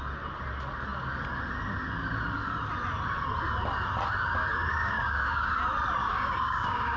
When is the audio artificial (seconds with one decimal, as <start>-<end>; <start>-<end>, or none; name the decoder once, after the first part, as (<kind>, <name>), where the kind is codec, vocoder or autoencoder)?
4.7-5.5 (codec, DAC); 6.0-7.0